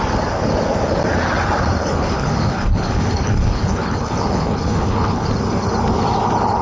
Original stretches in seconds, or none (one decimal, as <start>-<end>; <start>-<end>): 0.0-1.8; 5.3-6.6